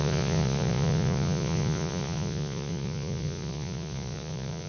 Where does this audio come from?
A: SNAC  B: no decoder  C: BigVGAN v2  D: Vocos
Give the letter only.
D